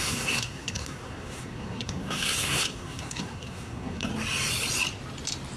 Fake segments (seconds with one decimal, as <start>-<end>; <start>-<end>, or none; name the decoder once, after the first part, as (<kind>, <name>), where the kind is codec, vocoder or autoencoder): 0.0-4.1 (codec, SNAC)